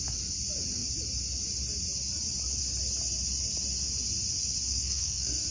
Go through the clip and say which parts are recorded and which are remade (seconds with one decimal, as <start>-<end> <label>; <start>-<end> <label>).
0.0-4.7 recorded; 4.7-5.5 remade